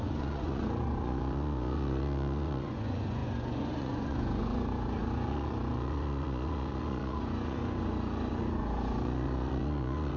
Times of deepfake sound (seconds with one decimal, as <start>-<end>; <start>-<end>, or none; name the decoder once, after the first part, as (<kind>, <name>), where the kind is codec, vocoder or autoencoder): 0.0-10.2 (vocoder, Vocos)